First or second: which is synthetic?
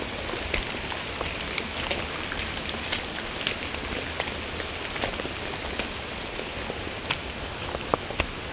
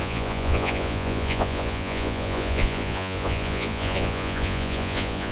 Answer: second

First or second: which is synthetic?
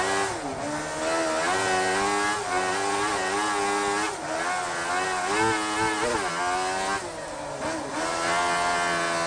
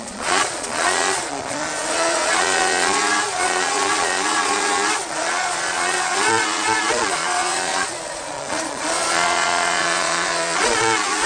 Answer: second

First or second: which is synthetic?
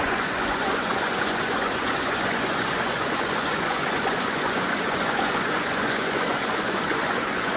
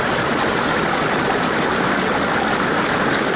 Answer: first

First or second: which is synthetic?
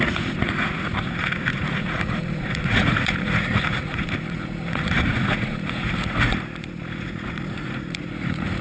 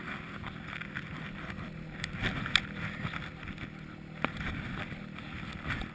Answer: first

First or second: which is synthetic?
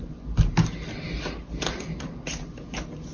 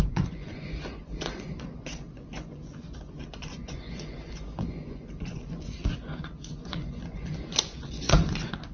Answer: second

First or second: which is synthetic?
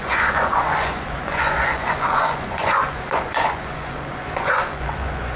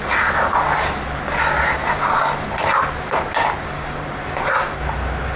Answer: first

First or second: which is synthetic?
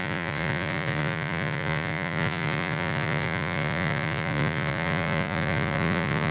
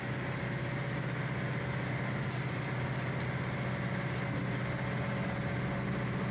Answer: first